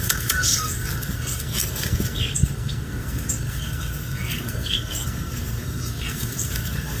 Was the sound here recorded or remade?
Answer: remade